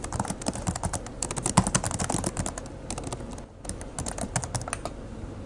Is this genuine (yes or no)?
yes